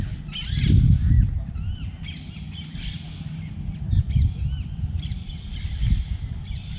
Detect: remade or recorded recorded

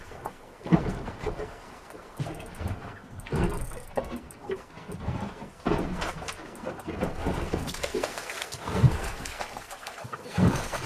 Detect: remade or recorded remade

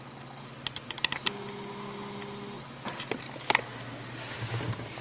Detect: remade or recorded recorded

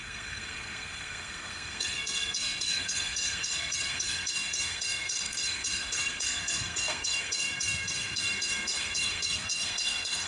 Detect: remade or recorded remade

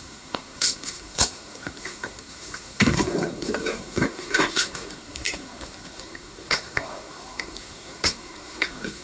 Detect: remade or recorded remade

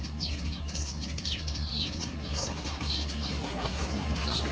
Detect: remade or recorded remade